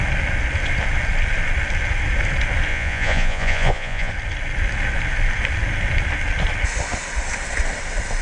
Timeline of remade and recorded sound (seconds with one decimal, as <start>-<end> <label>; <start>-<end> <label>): 0.0-2.7 recorded; 2.7-4.1 remade; 4.1-8.2 recorded